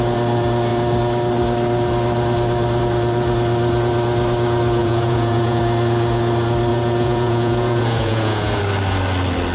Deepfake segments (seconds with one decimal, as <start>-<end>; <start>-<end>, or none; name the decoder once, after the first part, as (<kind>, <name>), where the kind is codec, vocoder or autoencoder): 4.8-5.6 (vocoder, Vocos); 6.7-8.6